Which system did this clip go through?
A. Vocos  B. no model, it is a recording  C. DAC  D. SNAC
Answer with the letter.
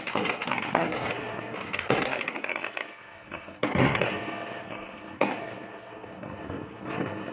D